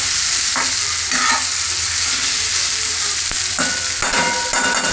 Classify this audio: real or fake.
real